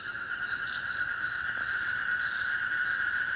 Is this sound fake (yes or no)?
yes